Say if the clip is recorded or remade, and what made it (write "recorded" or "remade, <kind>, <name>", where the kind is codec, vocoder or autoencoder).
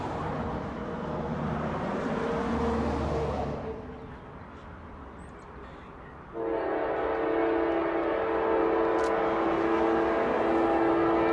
recorded